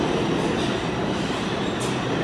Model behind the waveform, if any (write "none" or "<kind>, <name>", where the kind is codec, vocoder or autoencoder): none